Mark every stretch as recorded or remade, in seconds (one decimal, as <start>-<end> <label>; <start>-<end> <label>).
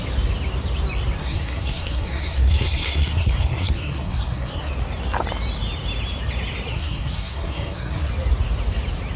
0.0-1.2 recorded; 1.2-4.7 remade; 4.7-6.7 recorded; 6.7-8.1 remade; 8.1-9.2 recorded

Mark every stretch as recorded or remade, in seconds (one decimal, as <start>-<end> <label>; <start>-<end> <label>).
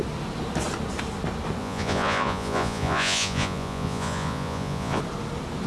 0.0-1.6 recorded; 1.6-5.0 remade; 5.0-5.7 recorded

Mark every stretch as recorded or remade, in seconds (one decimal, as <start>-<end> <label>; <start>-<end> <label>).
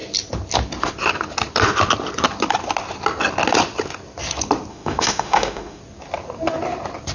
0.0-4.7 recorded; 4.7-5.8 remade; 5.8-7.1 recorded